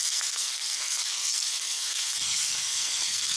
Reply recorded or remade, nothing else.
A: remade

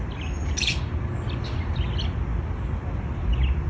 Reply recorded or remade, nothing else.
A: recorded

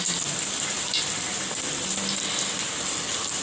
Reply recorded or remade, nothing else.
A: recorded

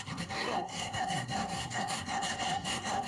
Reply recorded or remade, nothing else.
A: remade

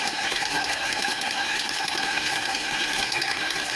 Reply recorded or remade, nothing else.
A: remade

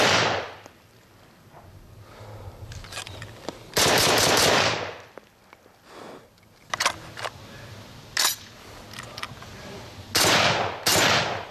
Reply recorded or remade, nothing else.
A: recorded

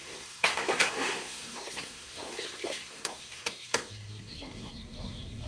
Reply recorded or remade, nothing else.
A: remade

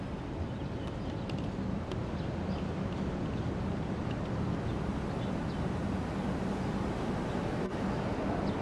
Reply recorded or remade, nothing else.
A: recorded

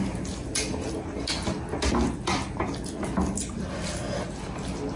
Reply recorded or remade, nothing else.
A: recorded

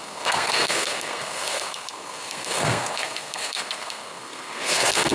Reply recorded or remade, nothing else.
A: remade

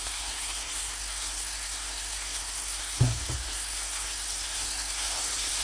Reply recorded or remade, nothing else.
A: remade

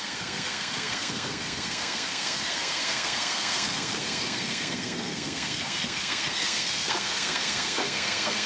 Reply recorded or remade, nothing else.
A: remade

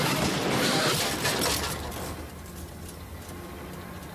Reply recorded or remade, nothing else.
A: recorded